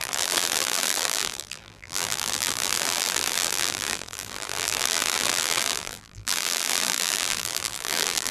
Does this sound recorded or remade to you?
remade